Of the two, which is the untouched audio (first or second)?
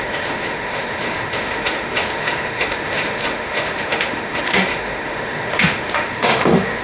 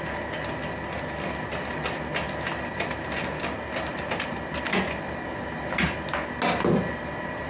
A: second